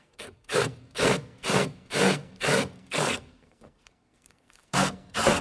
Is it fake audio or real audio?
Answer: fake